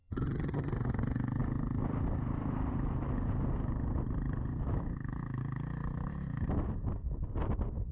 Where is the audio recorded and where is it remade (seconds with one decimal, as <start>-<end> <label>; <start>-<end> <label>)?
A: 0.0-0.7 remade; 0.7-7.9 recorded